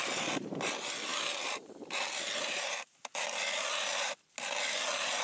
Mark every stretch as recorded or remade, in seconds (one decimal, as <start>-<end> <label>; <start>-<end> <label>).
0.0-5.2 recorded